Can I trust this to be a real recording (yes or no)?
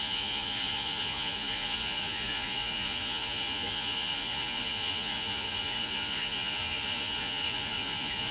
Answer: no